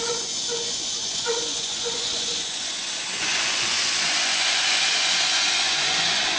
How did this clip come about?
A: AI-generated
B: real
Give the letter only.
A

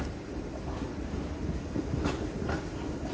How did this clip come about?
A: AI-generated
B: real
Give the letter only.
B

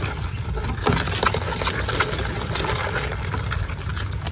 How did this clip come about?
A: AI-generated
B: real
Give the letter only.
B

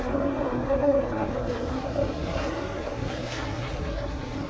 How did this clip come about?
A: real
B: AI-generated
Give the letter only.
B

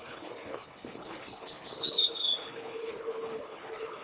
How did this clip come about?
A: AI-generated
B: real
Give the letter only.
A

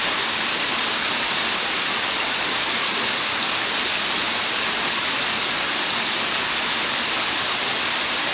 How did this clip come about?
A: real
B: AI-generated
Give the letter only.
A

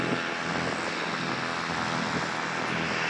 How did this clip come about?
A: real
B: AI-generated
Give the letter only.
A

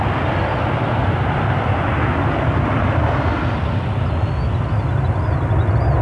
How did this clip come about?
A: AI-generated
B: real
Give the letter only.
B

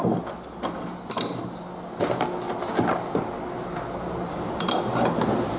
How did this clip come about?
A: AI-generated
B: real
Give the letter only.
B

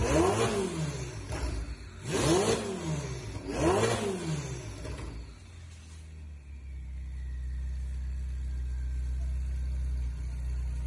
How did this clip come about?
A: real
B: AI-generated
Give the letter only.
A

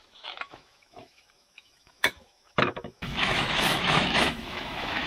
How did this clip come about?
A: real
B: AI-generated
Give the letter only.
B